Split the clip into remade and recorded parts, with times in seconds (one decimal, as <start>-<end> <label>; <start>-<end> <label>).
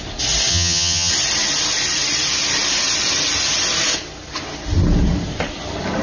0.0-0.5 recorded; 0.5-1.1 remade; 1.1-6.0 recorded